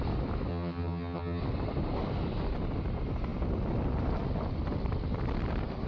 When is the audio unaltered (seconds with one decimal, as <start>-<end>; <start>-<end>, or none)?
0.0-0.5; 1.4-5.9